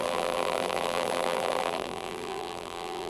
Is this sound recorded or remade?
remade